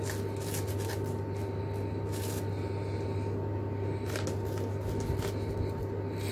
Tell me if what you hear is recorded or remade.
recorded